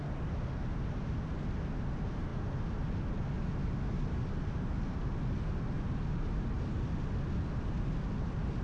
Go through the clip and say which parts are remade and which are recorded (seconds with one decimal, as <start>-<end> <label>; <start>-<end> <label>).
0.0-8.6 recorded

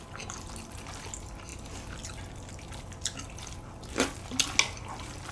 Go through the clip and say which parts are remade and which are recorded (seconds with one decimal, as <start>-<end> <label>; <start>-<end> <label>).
0.0-5.3 recorded

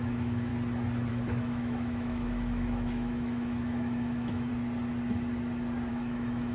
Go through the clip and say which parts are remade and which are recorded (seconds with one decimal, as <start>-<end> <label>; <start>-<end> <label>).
0.0-0.5 remade; 0.5-1.1 recorded; 1.1-4.5 remade; 4.5-5.9 recorded; 5.9-6.5 remade